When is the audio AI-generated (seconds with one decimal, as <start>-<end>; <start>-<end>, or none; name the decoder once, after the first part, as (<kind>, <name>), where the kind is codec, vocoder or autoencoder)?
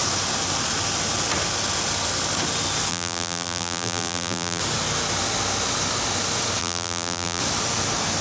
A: 2.9-4.6 (vocoder, BigVGAN v2); 6.6-7.4